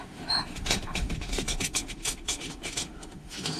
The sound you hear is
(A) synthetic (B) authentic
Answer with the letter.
A